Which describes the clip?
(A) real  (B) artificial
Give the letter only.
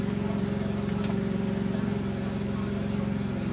A